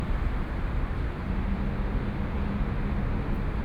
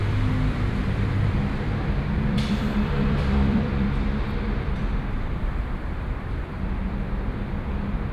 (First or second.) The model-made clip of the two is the second